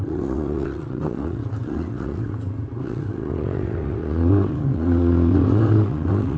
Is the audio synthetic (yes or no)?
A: yes